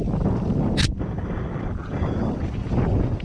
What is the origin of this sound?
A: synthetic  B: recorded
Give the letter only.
B